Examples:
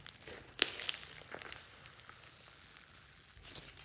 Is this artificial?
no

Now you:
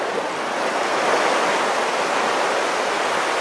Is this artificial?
no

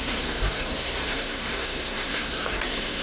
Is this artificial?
yes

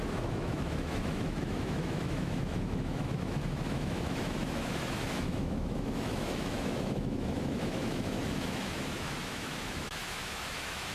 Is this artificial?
yes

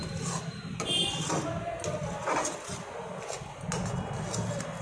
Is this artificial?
no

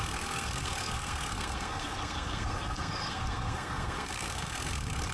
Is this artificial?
yes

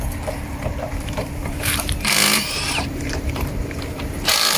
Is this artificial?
yes